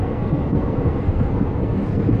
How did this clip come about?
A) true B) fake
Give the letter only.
B